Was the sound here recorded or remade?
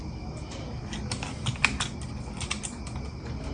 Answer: recorded